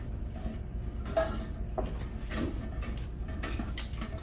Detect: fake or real real